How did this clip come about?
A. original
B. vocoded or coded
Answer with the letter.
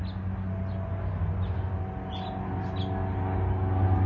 A